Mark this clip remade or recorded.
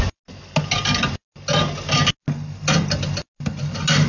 recorded